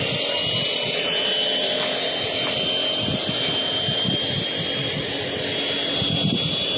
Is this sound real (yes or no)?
yes